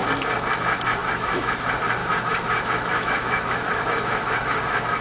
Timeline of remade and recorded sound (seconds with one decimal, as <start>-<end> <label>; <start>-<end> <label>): 0.0-1.0 recorded; 1.0-1.5 remade; 1.5-2.0 recorded; 2.0-5.0 remade